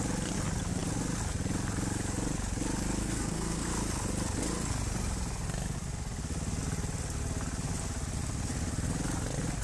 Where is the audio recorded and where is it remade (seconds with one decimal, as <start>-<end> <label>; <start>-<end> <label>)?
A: 0.0-3.0 recorded; 3.0-3.7 remade; 3.7-9.6 recorded